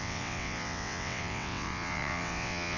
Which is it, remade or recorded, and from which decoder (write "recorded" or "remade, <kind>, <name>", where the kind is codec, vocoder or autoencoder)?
remade, vocoder, WaveNeXt